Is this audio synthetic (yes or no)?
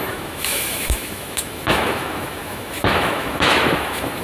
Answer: yes